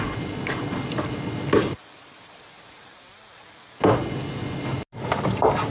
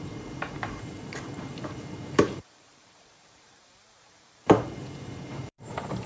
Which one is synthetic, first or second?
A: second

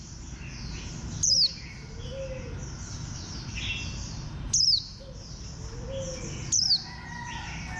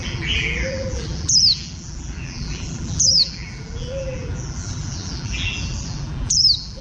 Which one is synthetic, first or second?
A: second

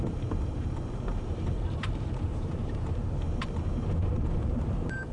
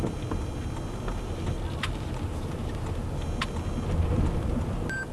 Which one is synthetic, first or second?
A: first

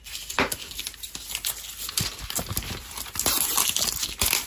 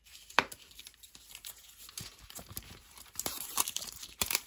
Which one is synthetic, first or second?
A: second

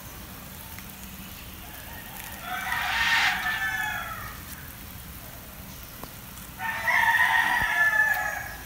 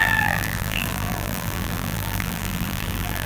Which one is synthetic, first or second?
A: second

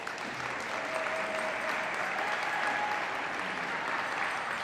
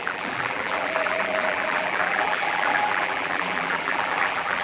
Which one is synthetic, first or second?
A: second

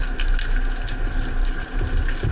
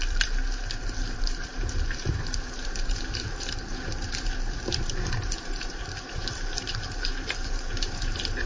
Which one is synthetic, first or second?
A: second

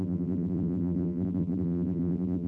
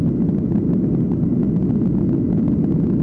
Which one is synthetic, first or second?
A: first